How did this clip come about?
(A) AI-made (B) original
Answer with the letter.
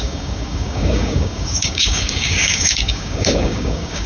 A